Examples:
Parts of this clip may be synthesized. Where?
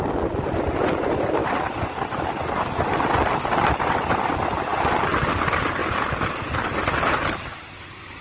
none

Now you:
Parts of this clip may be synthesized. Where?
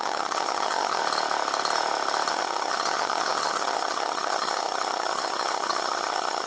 0.0-1.0 (vocoder, HiFi-GAN); 2.3-6.5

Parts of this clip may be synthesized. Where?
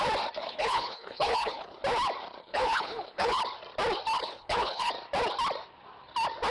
0.4-1.8 (codec, HILCodec); 2.4-3.4; 4.2-4.9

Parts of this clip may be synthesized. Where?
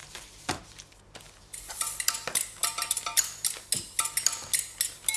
0.0-0.6 (vocoder, BigVGAN v2)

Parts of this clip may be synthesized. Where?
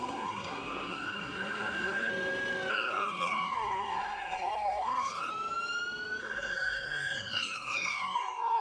0.0-2.1 (codec, SNAC); 2.7-5.3; 6.2-8.6